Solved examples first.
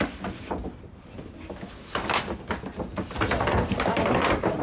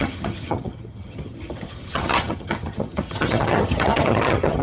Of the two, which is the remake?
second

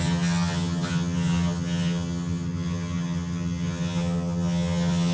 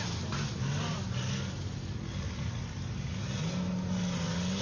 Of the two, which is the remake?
first